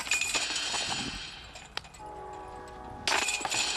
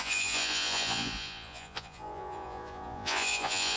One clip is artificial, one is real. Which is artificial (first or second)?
second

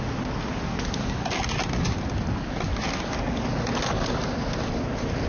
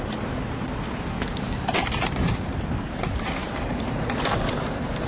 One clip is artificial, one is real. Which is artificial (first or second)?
second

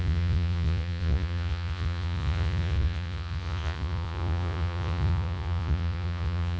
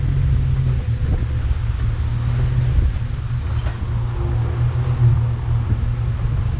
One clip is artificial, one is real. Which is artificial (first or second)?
first